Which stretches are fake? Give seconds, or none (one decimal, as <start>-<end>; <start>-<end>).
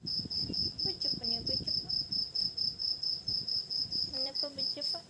2.8-4.3